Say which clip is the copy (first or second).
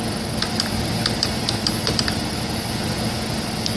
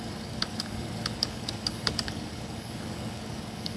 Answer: second